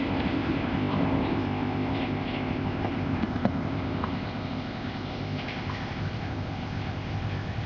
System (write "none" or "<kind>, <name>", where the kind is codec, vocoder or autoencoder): codec, ZipCodec